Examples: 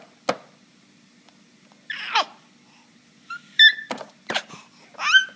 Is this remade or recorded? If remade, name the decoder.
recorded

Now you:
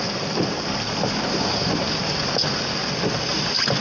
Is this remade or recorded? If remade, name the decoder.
recorded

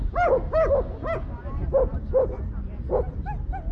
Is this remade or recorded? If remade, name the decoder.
recorded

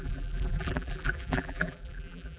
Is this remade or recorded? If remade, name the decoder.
remade, vocoder, BigVGAN v2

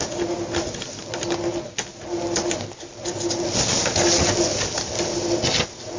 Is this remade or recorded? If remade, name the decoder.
recorded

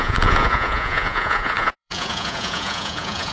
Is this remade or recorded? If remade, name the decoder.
remade, vocoder, Vocos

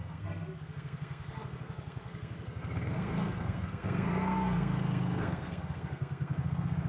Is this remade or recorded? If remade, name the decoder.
remade, codec, SNAC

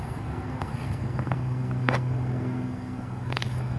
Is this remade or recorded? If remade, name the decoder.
remade, codec, SNAC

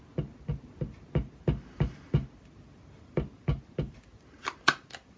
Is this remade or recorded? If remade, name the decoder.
recorded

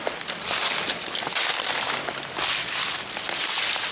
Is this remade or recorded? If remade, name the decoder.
recorded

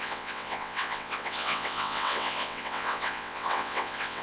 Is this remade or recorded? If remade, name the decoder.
remade, vocoder, WaveNeXt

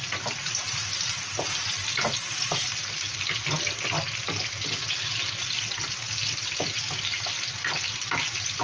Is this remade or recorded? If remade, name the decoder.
recorded